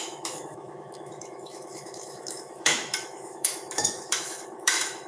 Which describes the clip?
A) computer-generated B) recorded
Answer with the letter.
A